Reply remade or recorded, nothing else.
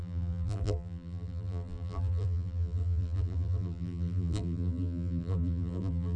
remade